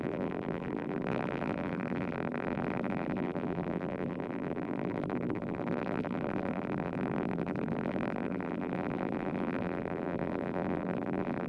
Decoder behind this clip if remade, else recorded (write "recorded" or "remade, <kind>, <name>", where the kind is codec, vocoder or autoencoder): remade, vocoder, BigVGAN v2